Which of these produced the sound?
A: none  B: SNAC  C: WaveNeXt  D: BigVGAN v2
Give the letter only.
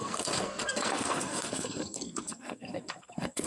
B